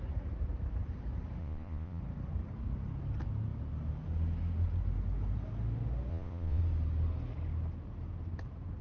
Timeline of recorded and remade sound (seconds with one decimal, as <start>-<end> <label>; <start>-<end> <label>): 0.0-1.4 recorded; 1.4-2.0 remade; 2.0-6.1 recorded; 6.1-6.6 remade; 6.6-8.8 recorded